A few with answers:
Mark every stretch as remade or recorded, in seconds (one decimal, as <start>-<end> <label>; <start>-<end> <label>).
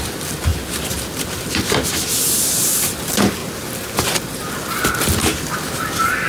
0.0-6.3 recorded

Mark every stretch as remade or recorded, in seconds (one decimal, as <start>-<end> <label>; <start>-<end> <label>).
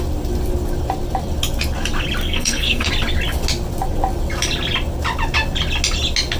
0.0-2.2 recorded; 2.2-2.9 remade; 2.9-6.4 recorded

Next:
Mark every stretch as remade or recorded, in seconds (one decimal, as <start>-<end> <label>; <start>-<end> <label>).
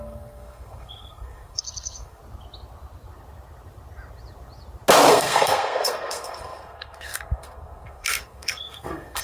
0.0-2.2 remade; 2.2-5.1 recorded; 5.1-9.2 remade